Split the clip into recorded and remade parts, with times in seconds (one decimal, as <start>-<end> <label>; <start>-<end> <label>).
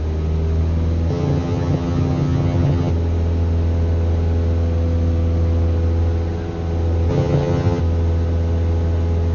0.0-1.1 recorded; 1.1-2.9 remade; 2.9-7.1 recorded; 7.1-7.8 remade; 7.8-9.3 recorded